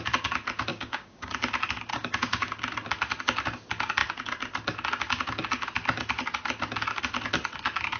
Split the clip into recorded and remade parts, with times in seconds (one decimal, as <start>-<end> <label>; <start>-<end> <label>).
0.0-0.7 recorded; 0.7-1.3 remade; 1.3-1.9 recorded; 1.9-2.5 remade; 2.5-8.0 recorded